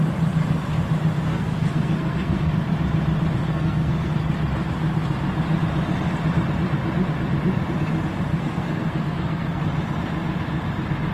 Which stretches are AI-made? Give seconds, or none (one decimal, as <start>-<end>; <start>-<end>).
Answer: 1.3-2.5; 3.5-4.1; 8.3-9.6